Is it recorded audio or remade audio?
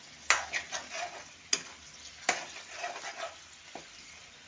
recorded